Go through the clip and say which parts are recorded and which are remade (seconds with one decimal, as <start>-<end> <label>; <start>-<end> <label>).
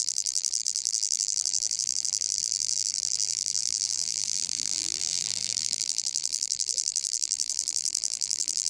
0.0-8.7 remade